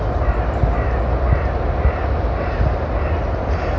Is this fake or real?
real